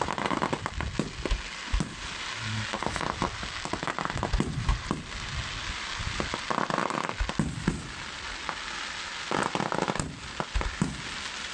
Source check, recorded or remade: recorded